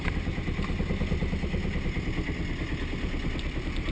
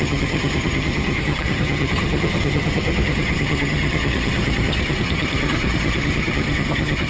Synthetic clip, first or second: second